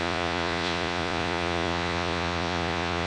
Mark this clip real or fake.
fake